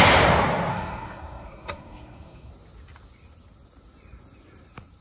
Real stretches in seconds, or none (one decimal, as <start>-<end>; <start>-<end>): 0.0-0.7; 2.5-5.0